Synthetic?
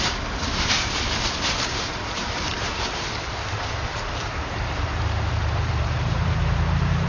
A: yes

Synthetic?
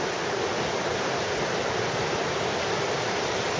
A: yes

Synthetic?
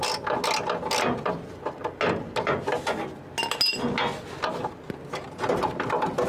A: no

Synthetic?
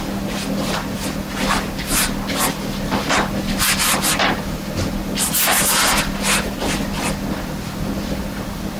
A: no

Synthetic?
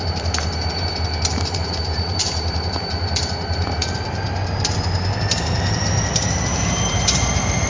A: yes